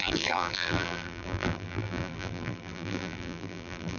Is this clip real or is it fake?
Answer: fake